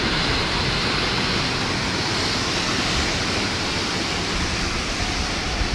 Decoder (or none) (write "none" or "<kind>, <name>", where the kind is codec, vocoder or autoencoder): none